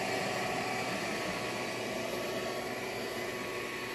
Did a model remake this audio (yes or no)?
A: no